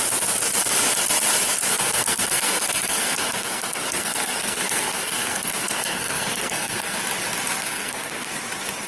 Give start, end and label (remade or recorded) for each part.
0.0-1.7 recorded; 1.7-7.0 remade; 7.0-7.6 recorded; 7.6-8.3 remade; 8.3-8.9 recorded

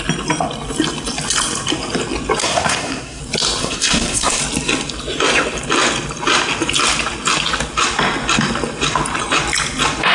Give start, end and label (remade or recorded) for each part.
0.0-2.4 recorded; 2.4-3.2 remade; 3.2-3.6 recorded; 3.6-4.4 remade; 4.4-10.1 recorded

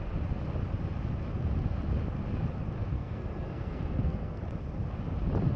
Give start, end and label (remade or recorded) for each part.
0.0-2.9 recorded; 2.9-4.4 remade; 4.4-5.6 recorded